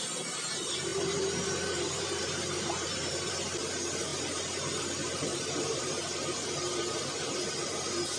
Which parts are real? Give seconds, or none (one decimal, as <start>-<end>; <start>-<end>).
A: 0.0-0.9; 3.3-5.3; 5.9-8.2